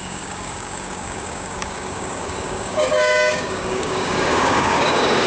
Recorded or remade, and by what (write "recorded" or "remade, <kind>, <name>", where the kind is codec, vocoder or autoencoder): remade, codec, DAC